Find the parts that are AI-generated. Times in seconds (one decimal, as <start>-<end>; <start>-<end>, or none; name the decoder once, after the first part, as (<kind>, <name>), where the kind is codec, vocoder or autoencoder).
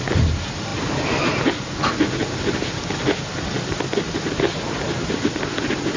none